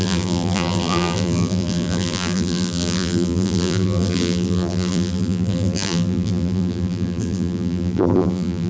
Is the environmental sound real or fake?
fake